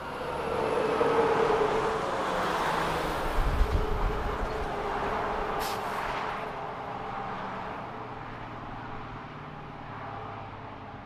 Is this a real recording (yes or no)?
yes